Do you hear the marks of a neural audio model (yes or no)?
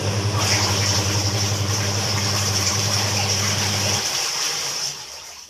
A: yes